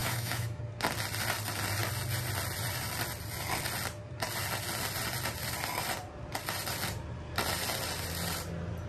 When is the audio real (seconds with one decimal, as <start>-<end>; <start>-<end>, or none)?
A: 0.6-8.9